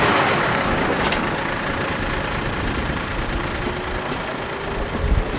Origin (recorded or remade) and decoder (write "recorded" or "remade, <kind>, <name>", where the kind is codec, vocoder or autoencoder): recorded